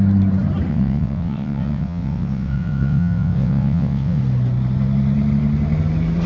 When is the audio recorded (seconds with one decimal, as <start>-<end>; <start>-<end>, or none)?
0.0-0.7; 4.2-6.3